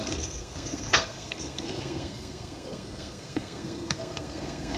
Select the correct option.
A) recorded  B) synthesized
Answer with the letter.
B